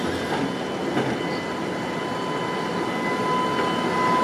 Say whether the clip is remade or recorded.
recorded